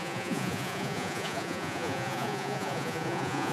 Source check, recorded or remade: remade